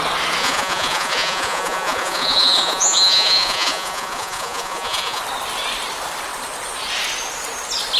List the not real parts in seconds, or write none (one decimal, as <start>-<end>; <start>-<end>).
0.4-5.2